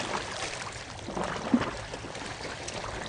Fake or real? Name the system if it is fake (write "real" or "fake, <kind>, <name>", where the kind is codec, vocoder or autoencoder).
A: fake, vocoder, BigVGAN v2